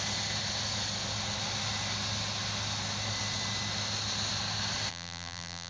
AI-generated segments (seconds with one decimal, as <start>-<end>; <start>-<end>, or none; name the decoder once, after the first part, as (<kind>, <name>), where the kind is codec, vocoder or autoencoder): 4.9-5.7 (vocoder, BigVGAN v2)